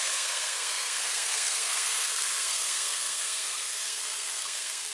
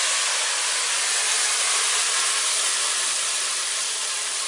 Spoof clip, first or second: first